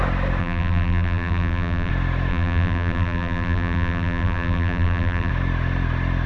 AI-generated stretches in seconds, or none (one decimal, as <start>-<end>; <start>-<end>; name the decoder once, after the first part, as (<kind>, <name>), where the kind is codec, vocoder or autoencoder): 0.4-1.9 (vocoder, BigVGAN v2); 2.3-5.3